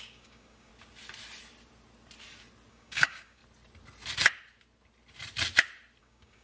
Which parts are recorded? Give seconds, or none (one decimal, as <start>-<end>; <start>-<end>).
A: 0.7-2.7; 3.4-6.0